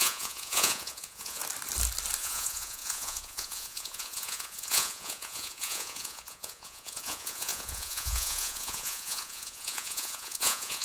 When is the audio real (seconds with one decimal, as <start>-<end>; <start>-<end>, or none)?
1.4-2.2